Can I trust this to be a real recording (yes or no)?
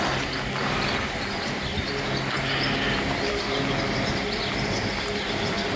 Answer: yes